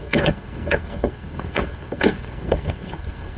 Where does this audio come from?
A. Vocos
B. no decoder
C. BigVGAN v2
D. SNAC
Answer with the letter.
D